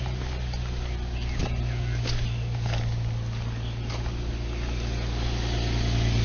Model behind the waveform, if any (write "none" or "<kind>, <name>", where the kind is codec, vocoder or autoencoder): none